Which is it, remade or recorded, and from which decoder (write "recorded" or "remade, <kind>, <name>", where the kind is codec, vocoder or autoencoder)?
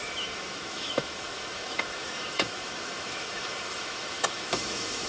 remade, autoencoder, DAC-VAE